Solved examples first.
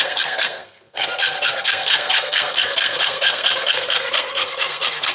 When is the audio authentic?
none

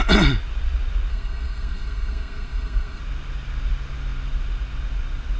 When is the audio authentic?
0.0-1.1; 3.0-5.4

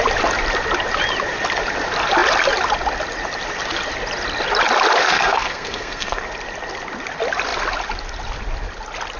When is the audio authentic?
0.0-5.0; 6.2-9.2